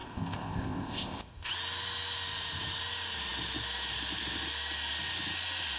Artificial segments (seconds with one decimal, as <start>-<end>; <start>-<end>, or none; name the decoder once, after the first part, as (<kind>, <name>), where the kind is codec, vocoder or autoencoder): 0.0-1.5 (codec, ZipCodec)